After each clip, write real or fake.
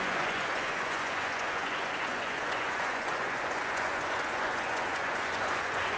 fake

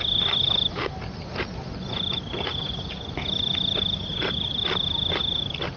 real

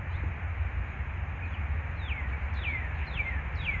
real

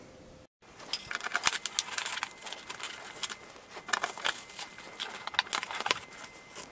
real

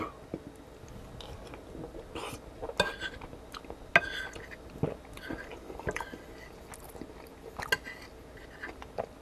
real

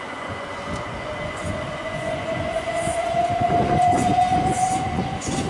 fake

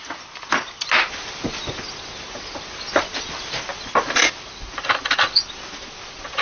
real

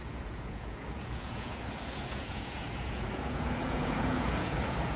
fake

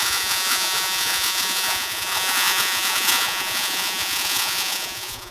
fake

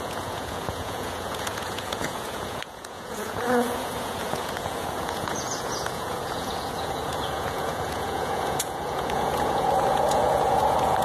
fake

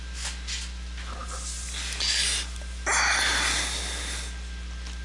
real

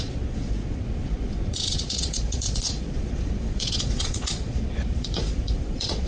fake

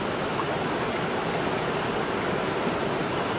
real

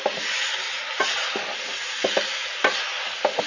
real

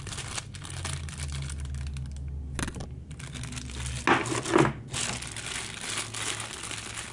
real